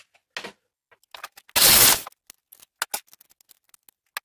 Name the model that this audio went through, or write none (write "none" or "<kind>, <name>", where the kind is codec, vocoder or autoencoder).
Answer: none